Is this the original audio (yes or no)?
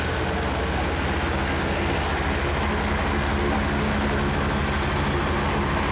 yes